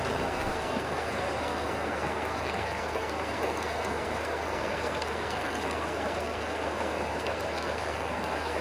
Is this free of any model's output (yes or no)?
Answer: no